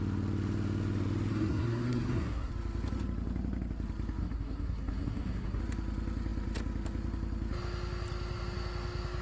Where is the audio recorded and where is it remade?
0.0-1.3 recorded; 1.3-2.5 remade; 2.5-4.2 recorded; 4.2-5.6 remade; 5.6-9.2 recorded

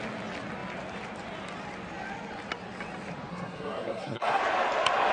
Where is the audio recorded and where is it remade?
0.0-3.3 recorded; 3.3-4.4 remade; 4.4-5.1 recorded

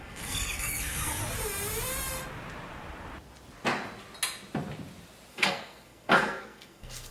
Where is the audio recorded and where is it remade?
0.0-1.2 remade; 1.2-5.3 recorded; 5.3-7.1 remade

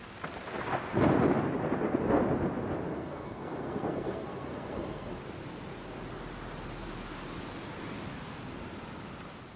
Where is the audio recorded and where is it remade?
0.0-2.9 recorded; 2.9-5.2 remade; 5.2-9.6 recorded

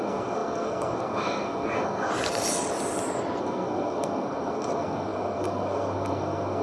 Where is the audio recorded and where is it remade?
0.0-2.1 remade; 2.1-3.4 recorded; 3.4-6.6 remade

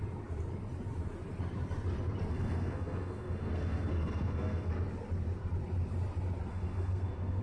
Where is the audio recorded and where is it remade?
0.0-2.3 recorded; 2.3-4.7 remade; 4.7-6.5 recorded; 6.5-7.4 remade

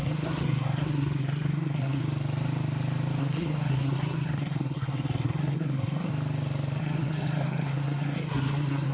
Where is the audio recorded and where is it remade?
0.0-2.0 remade; 2.0-3.2 recorded; 3.2-6.1 remade; 6.1-6.8 recorded; 6.8-8.9 remade

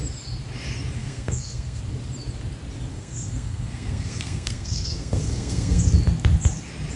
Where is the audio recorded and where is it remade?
0.0-1.0 recorded; 1.0-1.8 remade; 1.8-2.9 recorded; 2.9-5.8 remade; 5.8-7.0 recorded